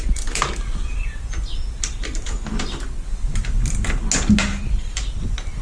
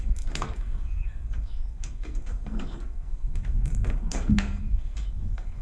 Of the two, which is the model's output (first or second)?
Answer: second